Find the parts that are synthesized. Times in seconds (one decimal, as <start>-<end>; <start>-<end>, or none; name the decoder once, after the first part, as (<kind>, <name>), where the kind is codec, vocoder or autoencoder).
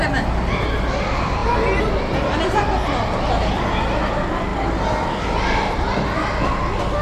none